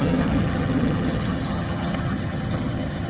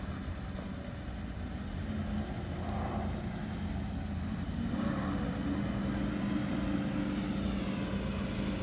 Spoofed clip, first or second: first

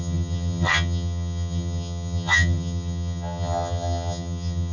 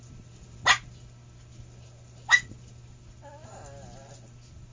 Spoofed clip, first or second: first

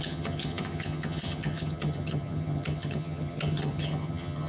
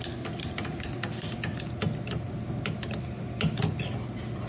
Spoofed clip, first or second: first